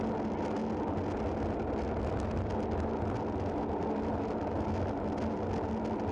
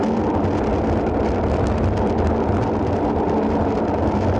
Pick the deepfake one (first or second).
second